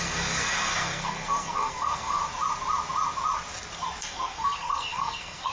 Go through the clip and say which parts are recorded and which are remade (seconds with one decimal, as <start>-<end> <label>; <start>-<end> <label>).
0.0-2.2 remade; 2.2-4.0 recorded; 4.0-5.5 remade